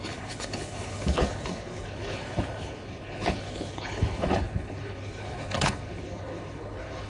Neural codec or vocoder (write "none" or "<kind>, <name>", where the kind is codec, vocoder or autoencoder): codec, HILCodec